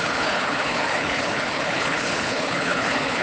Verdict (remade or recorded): remade